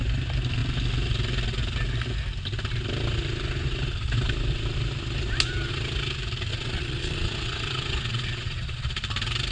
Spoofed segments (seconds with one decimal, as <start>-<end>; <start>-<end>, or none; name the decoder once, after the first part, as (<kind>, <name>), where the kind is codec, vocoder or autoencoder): 6.5-8.9 (vocoder, Vocos)

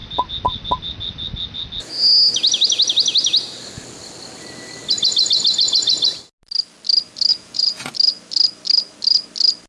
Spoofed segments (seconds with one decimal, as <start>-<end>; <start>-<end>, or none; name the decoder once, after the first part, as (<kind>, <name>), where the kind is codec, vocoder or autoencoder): 7.3-7.9 (vocoder, Vocos)